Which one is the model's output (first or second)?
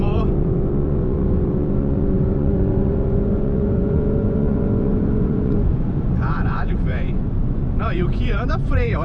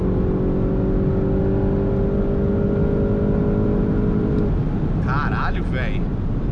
first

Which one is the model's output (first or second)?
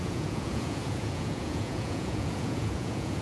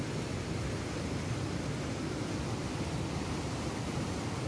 first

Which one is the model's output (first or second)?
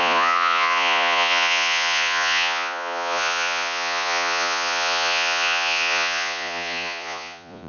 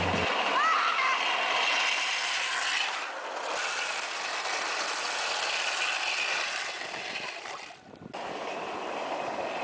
first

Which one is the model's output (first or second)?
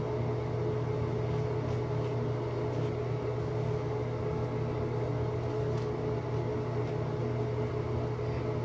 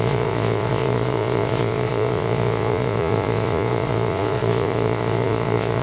second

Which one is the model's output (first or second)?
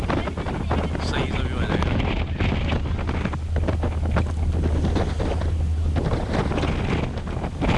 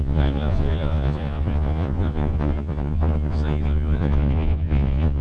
second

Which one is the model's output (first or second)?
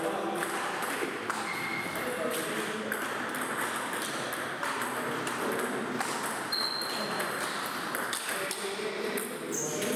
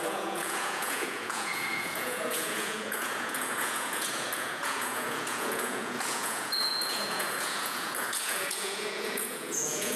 second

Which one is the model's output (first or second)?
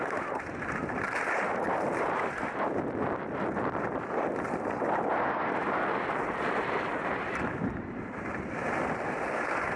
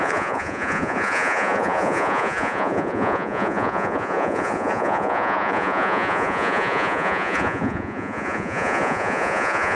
second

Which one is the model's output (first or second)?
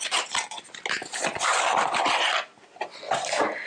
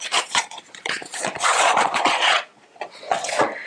second